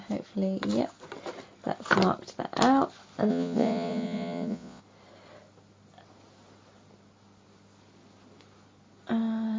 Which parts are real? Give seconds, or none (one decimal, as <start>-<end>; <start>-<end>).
0.0-3.3; 4.8-9.6